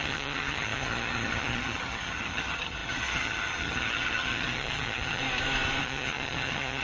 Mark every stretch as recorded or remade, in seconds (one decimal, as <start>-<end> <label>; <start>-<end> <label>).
0.0-5.2 remade; 5.2-5.8 recorded; 5.8-6.8 remade